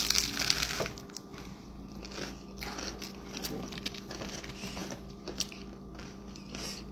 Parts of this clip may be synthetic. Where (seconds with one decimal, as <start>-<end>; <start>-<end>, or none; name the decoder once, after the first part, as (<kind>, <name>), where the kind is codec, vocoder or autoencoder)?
1.3-2.0 (vocoder, BigVGAN v2); 4.8-6.2